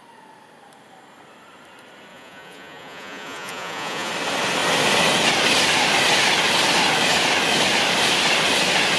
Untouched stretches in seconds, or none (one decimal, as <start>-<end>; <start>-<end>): 0.0-2.1; 4.1-9.0